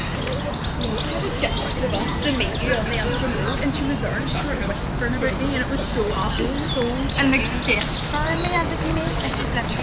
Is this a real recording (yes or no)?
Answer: yes